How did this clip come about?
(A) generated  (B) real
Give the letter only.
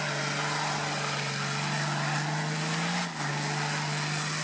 B